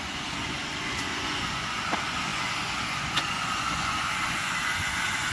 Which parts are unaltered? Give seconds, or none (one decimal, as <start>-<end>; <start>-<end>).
none